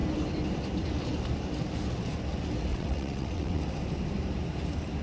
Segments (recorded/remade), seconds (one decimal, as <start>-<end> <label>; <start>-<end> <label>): 0.0-2.7 recorded; 2.7-3.6 remade; 3.6-5.0 recorded